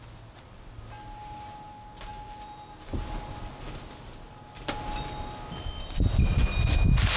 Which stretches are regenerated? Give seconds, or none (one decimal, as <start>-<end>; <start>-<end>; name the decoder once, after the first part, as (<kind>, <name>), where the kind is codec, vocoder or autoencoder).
none